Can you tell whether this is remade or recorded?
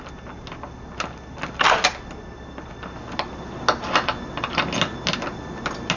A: recorded